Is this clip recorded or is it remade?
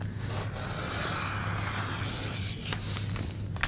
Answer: recorded